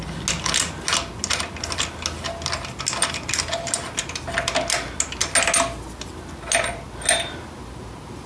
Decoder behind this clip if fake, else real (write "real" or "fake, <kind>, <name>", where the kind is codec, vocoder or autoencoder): real